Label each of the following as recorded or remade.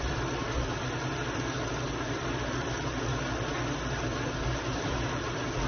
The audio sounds remade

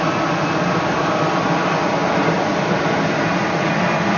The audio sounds recorded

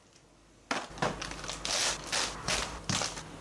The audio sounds recorded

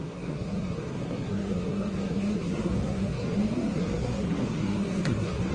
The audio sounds remade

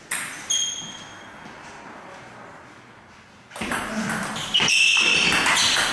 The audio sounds recorded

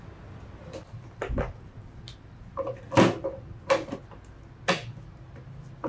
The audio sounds recorded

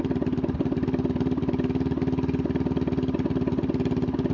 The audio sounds recorded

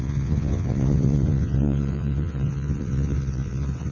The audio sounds remade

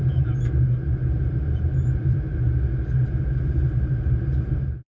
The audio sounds remade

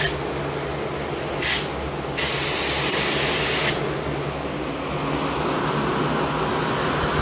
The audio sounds recorded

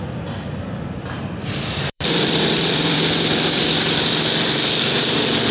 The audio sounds remade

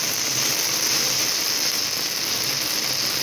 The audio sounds recorded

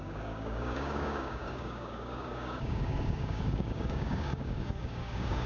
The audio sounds remade